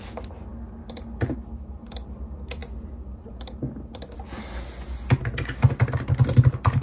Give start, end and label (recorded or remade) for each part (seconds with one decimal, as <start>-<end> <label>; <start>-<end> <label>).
0.0-6.8 recorded

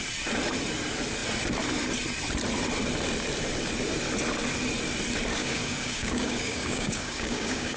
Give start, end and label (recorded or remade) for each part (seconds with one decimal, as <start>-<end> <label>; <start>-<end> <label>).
0.0-5.4 recorded; 5.4-7.8 remade

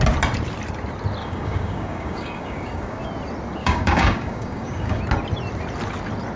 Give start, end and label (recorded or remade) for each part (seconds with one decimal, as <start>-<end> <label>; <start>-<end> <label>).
0.0-1.2 recorded; 1.2-3.0 remade; 3.0-3.6 recorded; 3.6-5.0 remade; 5.0-6.4 recorded

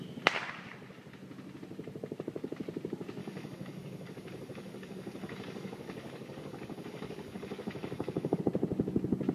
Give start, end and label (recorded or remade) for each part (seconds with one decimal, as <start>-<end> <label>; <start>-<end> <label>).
0.0-3.2 recorded; 3.2-8.4 remade; 8.4-9.3 recorded

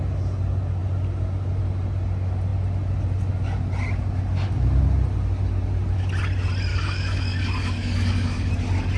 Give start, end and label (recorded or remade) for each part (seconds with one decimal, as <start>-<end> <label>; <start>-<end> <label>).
0.0-6.7 recorded; 6.7-8.5 remade; 8.5-9.0 recorded